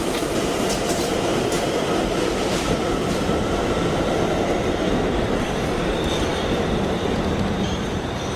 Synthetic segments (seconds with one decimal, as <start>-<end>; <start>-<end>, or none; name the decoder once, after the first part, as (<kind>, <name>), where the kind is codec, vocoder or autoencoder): 0.0-3.6 (vocoder, BigVGAN v2); 4.4-6.3; 7.5-8.4